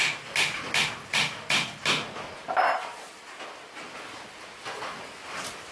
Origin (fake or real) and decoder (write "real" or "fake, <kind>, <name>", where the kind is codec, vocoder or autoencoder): real